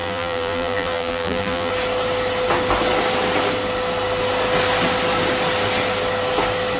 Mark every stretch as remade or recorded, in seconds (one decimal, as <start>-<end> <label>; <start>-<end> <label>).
0.0-1.7 remade; 1.7-6.8 recorded